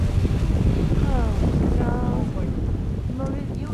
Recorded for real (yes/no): yes